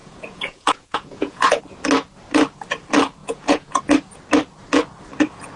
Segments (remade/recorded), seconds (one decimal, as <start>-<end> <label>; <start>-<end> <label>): 0.0-1.6 remade; 1.6-3.2 recorded; 3.2-3.8 remade; 3.8-5.6 recorded